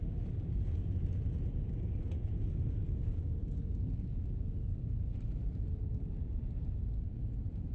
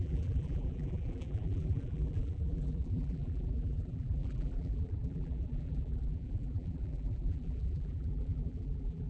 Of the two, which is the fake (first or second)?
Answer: second